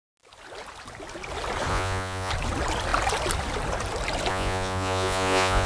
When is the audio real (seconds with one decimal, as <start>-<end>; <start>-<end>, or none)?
0.0-1.7; 2.3-4.3